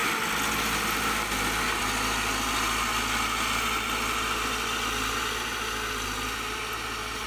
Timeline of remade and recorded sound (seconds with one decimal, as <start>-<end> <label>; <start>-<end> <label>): 0.0-7.3 recorded